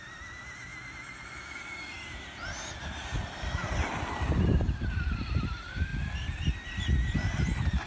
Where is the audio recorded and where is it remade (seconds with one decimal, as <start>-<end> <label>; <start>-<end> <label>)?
0.0-0.7 remade; 0.7-2.8 recorded; 2.8-5.9 remade; 5.9-7.9 recorded